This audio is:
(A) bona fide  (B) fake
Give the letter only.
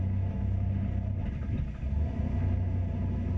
A